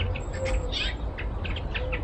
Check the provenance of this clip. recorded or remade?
recorded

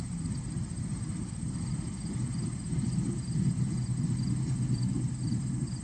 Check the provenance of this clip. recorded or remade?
recorded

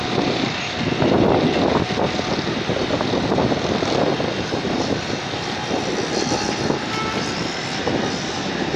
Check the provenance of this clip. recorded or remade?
recorded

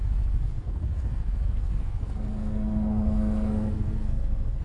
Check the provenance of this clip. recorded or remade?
remade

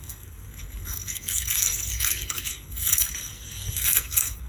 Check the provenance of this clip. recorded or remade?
remade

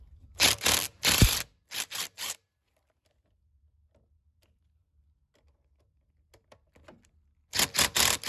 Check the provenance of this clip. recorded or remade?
recorded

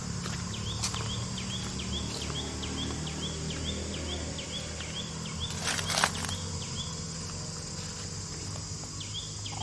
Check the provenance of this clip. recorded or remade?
recorded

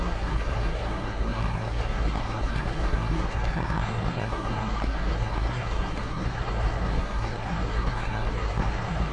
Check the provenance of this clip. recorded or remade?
remade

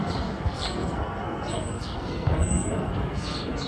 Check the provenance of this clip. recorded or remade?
remade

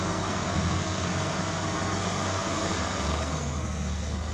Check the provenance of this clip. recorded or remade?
remade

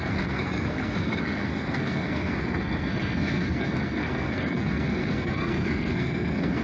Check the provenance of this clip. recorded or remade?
remade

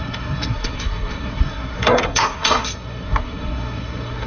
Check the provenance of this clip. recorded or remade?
remade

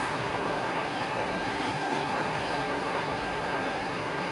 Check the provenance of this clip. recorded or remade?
remade